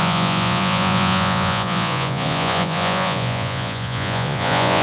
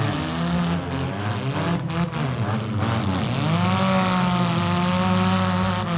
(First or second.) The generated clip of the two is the first